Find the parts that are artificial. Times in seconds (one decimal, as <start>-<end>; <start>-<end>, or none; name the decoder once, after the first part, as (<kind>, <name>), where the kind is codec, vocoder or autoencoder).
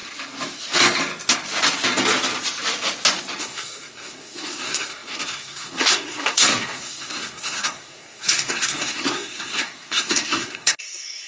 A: 3.4-11.3 (codec, SNAC)